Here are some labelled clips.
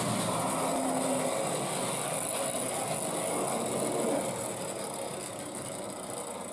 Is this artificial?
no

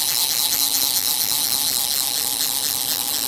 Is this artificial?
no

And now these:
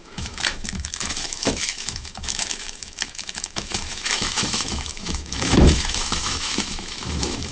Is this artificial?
yes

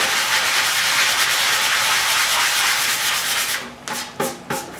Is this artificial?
no